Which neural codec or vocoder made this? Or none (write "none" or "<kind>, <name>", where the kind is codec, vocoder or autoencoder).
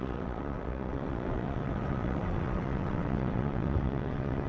vocoder, WaveNeXt